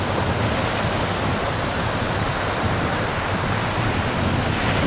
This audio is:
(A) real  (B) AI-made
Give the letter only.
A